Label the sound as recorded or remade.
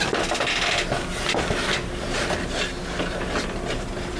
recorded